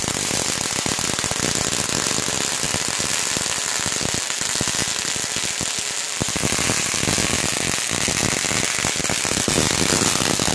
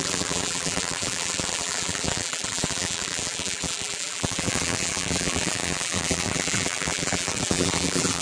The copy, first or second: second